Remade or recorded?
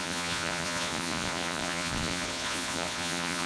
remade